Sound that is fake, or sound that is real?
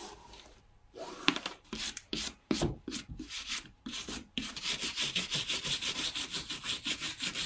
fake